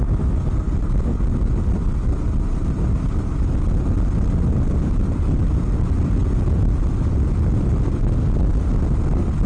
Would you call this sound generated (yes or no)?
no